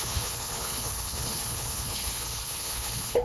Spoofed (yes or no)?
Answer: yes